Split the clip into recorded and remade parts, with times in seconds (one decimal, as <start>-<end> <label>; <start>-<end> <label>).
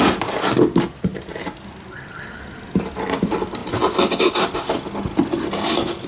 0.0-6.1 recorded